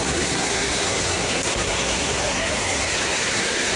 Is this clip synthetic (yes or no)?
yes